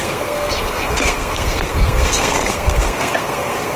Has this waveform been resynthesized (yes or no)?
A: yes